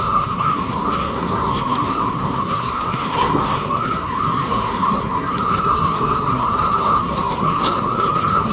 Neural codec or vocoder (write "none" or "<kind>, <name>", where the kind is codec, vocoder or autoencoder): codec, SNAC